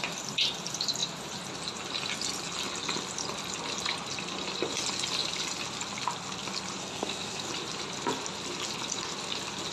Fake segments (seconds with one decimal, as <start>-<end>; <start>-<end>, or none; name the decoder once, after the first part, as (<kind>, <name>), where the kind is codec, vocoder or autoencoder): 6.8-7.5 (codec, SNAC)